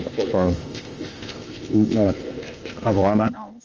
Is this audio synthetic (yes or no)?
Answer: yes